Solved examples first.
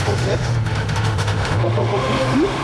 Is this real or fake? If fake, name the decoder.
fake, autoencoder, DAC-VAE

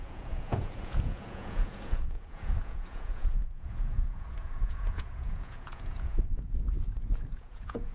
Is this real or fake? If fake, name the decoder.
fake, vocoder, Vocos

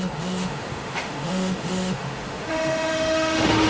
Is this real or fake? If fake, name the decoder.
fake, autoencoder, DAC-VAE